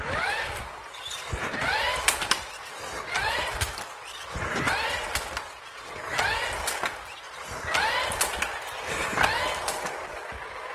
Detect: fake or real real